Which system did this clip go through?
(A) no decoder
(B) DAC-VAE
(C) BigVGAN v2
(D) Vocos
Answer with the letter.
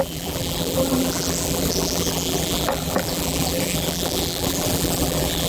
C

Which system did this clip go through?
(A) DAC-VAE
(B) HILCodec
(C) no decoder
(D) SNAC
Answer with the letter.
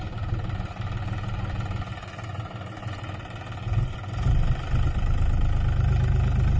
C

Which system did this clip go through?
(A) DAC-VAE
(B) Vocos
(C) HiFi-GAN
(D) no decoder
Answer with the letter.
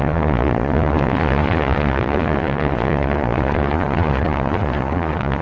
B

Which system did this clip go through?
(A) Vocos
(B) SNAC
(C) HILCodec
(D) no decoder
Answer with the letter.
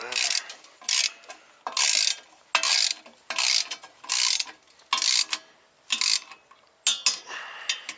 D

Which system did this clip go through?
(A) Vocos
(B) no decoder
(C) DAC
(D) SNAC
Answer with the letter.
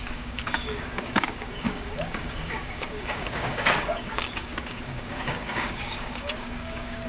C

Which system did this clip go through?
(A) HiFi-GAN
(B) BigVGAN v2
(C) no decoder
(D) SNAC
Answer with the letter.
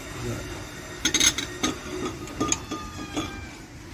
C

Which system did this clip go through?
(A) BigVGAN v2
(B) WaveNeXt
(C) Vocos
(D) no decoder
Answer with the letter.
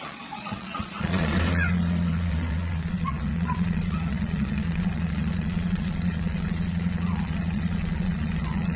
C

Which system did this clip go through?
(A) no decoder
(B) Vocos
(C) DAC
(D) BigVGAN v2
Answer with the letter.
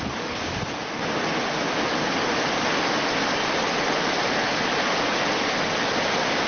A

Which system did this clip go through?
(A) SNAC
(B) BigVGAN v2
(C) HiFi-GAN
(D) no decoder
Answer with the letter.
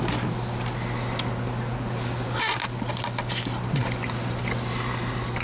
D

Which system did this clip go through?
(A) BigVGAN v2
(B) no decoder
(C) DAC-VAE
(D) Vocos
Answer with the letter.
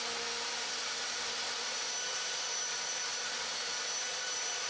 B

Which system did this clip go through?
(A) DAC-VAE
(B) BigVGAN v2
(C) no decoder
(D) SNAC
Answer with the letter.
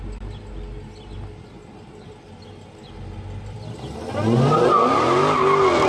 C